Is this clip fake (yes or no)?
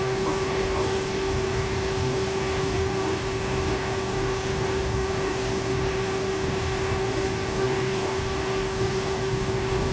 yes